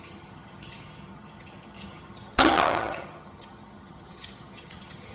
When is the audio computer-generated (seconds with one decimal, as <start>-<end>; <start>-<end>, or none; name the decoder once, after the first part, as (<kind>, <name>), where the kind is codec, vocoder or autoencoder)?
0.0-5.1 (vocoder, HiFi-GAN)